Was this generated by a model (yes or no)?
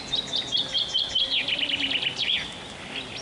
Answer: no